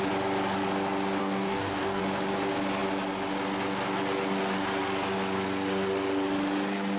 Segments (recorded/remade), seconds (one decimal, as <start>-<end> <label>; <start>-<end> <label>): 0.0-1.2 recorded; 1.2-2.0 remade; 2.0-7.0 recorded